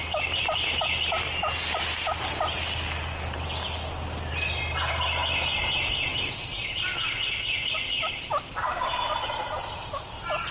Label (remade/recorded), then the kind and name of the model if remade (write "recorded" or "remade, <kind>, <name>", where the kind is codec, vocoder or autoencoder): recorded